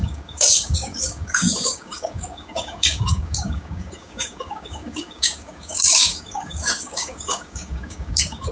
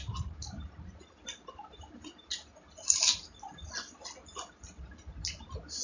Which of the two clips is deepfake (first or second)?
first